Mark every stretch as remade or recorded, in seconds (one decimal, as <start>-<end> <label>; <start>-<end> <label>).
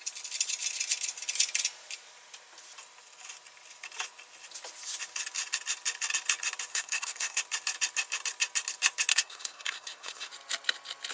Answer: 0.0-6.7 recorded; 6.7-7.4 remade; 7.4-9.1 recorded; 9.1-10.3 remade; 10.3-11.1 recorded